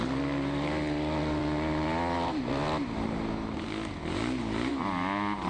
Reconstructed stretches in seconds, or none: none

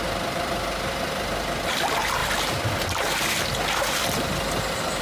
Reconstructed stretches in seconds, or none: 2.2-3.0 (vocoder, BigVGAN v2)

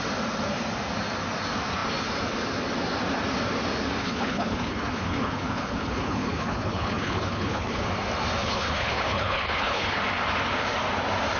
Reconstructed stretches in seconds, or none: 4.0-7.8 (codec, HILCodec); 8.4-10.0